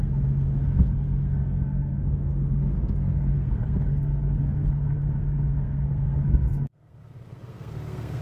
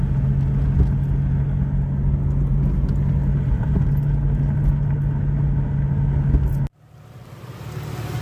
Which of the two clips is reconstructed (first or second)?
first